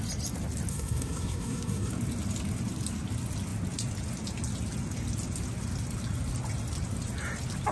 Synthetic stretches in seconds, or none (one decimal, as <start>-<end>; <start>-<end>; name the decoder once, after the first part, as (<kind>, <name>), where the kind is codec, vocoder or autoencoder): 0.7-1.9 (codec, SNAC)